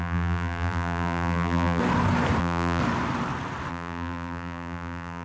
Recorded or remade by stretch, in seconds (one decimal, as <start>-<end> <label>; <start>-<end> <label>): 0.0-1.8 remade; 1.8-2.4 recorded; 2.4-2.8 remade; 2.8-3.7 recorded; 3.7-5.2 remade